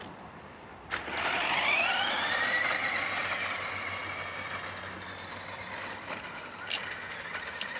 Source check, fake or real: real